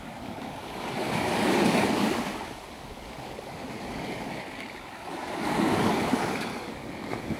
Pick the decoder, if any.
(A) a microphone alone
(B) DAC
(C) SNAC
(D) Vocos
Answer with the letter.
B